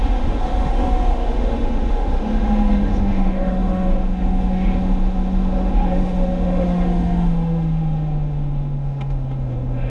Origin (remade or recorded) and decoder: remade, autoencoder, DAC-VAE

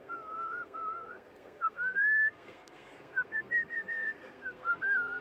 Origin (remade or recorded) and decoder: remade, codec, SNAC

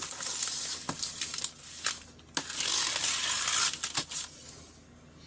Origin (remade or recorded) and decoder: recorded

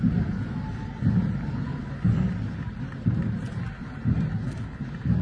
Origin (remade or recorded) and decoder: recorded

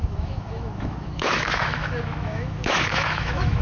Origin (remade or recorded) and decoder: remade, autoencoder, DAC-VAE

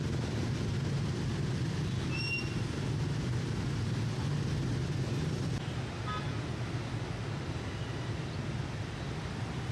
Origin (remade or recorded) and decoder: recorded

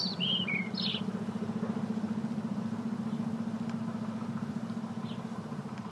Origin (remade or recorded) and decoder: remade, vocoder, BigVGAN v2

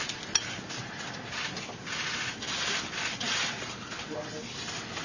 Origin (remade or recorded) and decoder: recorded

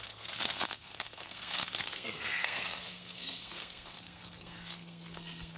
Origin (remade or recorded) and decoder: remade, codec, SNAC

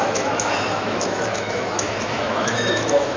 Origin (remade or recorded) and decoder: remade, autoencoder, DAC-VAE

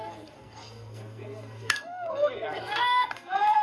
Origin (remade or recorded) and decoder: remade, codec, SNAC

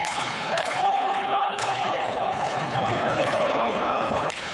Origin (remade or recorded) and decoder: remade, codec, HILCodec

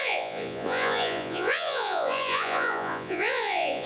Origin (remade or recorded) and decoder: remade, vocoder, Vocos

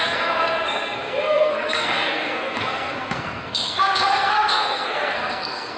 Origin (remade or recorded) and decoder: remade, codec, SNAC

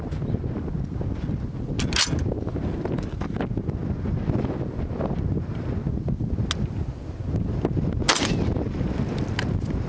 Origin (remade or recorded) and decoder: recorded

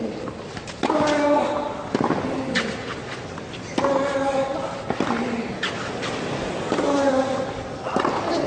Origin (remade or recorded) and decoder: recorded